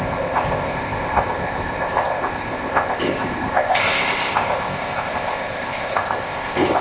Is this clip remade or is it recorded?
remade